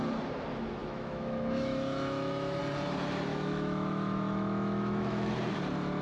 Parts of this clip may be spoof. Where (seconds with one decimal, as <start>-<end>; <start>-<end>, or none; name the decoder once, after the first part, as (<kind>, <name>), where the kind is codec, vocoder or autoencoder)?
0.8-2.6 (autoencoder, DAC-VAE); 3.3-5.3